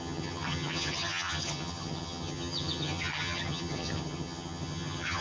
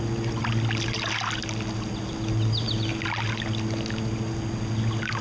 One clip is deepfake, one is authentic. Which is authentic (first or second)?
second